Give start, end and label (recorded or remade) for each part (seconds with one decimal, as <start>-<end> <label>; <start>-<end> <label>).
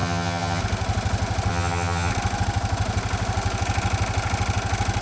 0.0-0.6 remade; 0.6-1.5 recorded; 1.5-2.1 remade; 2.1-5.0 recorded